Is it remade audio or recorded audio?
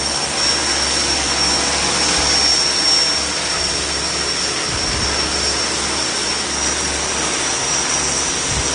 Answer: recorded